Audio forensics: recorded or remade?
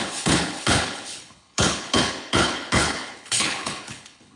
remade